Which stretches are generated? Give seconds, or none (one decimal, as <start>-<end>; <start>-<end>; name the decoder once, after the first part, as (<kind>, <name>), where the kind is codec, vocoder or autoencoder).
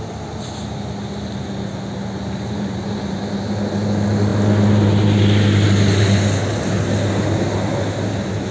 none